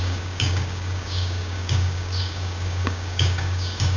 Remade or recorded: remade